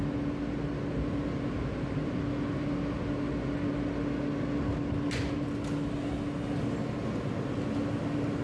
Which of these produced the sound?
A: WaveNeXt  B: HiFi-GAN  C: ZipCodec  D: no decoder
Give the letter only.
D